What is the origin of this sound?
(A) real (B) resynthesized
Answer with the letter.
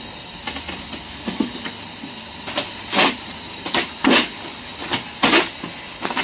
A